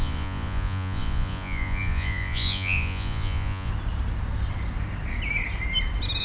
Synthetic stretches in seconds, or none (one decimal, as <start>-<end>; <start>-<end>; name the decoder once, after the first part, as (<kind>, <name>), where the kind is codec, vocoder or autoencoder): 0.0-3.7 (vocoder, Vocos)